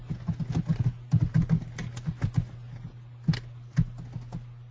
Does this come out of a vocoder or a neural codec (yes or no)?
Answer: no